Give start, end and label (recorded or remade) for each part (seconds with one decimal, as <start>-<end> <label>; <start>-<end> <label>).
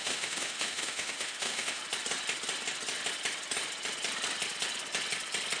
0.0-1.8 remade; 1.8-5.6 recorded